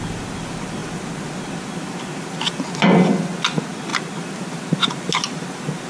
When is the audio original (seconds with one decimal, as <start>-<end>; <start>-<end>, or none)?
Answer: 0.0-5.9

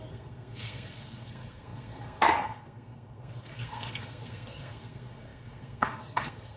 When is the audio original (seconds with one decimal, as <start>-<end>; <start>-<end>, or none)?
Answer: none

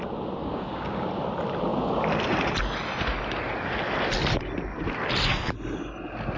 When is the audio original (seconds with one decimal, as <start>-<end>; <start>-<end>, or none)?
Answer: 0.0-0.4; 1.1-6.4